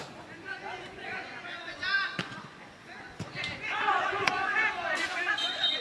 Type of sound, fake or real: fake